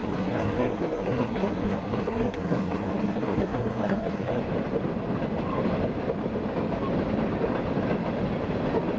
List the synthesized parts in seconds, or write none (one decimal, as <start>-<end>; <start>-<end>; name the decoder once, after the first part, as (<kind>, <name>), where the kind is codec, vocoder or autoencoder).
0.0-4.4 (codec, SNAC)